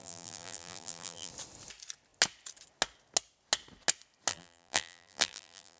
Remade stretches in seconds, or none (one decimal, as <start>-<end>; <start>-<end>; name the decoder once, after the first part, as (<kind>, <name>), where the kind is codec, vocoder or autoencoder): 0.0-1.3 (vocoder, BigVGAN v2); 4.3-5.8